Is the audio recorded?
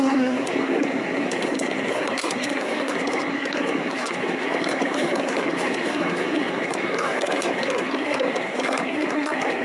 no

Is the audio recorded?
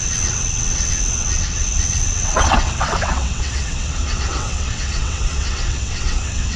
no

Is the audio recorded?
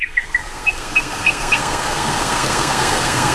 no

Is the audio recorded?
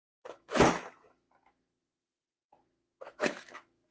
no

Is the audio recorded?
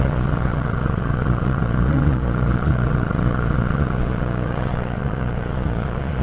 no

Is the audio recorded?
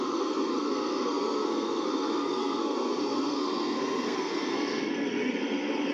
no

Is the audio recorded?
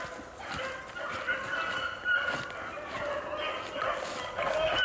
yes